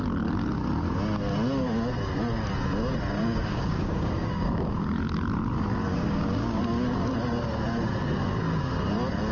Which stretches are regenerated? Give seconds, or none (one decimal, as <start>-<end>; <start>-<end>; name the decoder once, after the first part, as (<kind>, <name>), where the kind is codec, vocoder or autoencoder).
3.2-4.8 (codec, DAC); 5.9-6.6